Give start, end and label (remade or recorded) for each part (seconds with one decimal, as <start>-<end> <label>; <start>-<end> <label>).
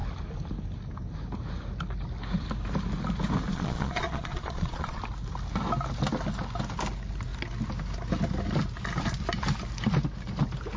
0.0-3.5 recorded; 3.5-5.0 remade; 5.0-10.8 recorded